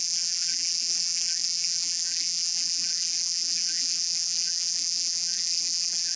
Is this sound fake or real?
fake